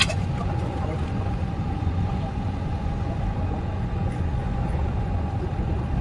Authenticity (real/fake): fake